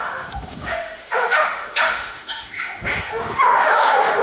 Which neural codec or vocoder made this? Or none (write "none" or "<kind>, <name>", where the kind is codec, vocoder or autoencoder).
autoencoder, DAC-VAE